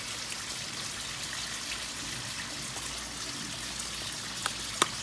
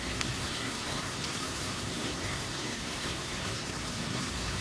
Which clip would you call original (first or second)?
first